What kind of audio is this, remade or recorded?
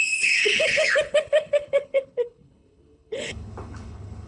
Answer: remade